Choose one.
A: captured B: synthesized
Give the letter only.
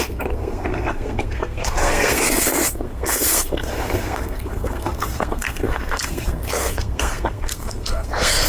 B